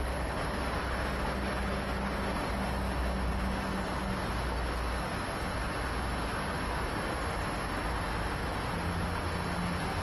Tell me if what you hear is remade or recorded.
recorded